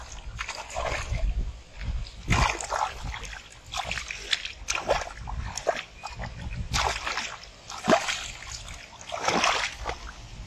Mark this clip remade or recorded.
recorded